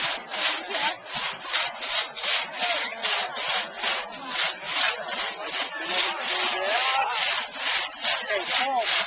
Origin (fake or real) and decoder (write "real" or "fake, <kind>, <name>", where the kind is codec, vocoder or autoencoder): real